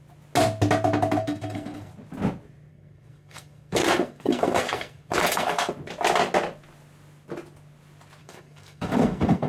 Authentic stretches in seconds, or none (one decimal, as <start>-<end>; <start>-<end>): 0.0-1.2; 1.9-2.7; 5.7-8.2